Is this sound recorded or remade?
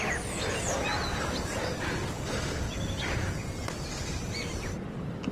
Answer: recorded